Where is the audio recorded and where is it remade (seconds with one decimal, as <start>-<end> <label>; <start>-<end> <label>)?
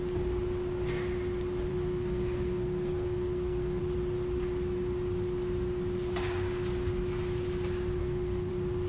0.0-1.7 recorded; 1.7-3.8 remade; 3.8-8.0 recorded; 8.0-8.5 remade; 8.5-8.9 recorded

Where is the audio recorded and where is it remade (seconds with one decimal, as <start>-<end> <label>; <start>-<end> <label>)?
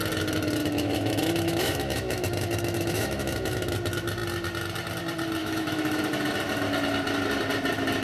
0.0-0.6 recorded; 0.6-3.7 remade; 3.7-5.4 recorded; 5.4-6.0 remade; 6.0-8.0 recorded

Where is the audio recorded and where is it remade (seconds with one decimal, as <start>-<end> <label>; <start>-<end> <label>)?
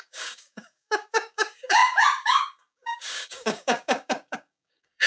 0.0-5.1 remade